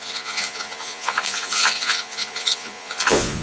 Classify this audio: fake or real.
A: fake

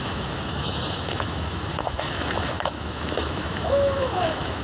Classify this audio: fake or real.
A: fake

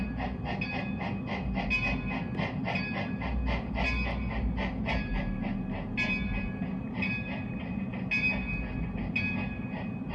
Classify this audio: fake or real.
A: real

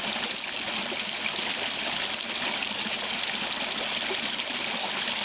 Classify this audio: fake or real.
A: real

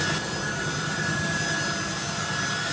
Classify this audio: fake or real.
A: real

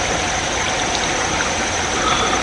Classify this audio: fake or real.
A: real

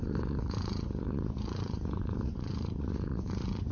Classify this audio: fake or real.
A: fake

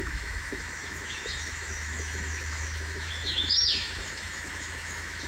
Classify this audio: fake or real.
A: fake